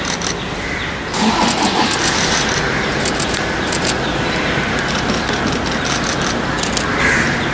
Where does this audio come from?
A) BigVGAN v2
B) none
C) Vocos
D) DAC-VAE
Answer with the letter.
B